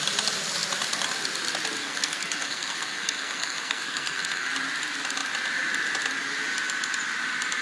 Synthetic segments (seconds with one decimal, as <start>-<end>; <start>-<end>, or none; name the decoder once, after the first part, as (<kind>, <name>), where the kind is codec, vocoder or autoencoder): 1.8-4.5 (codec, SNAC)